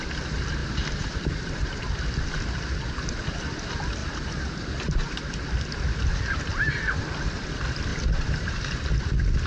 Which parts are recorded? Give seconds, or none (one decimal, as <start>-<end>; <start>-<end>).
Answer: 0.0-0.6; 1.8-4.0; 5.3-7.9; 8.8-9.5